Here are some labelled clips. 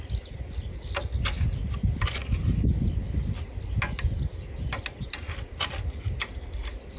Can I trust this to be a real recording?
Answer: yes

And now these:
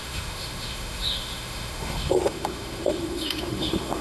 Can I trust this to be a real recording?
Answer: no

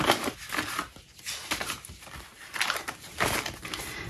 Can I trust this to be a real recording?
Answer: yes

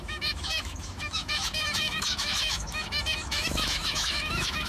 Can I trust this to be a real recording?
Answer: no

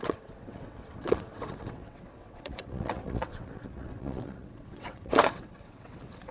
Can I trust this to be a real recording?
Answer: no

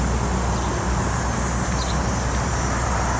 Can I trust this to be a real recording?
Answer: yes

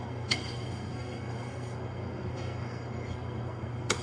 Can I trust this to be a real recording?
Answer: no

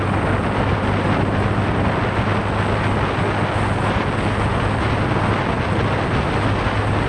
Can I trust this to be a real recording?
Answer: yes